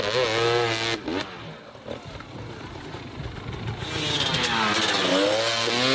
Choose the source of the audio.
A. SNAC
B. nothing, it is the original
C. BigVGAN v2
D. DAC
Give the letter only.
B